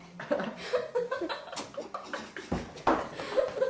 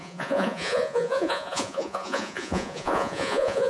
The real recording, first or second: first